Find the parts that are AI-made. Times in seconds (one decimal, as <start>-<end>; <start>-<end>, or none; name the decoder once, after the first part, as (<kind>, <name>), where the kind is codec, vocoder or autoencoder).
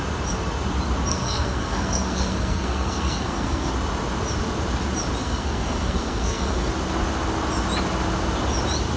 1.1-3.7 (codec, SNAC); 5.2-6.7